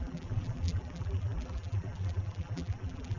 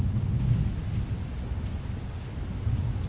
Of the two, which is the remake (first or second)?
first